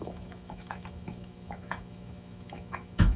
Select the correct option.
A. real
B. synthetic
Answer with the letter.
B